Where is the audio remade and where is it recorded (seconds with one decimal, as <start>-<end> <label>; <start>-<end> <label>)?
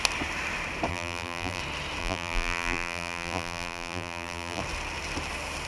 0.0-0.9 recorded; 0.9-1.6 remade; 1.6-2.0 recorded; 2.0-4.6 remade; 4.6-5.7 recorded